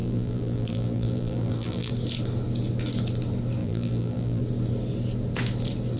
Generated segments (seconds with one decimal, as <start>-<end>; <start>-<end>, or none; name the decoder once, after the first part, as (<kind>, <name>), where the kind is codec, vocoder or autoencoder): 0.0-1.9 (vocoder, BigVGAN v2); 3.6-4.4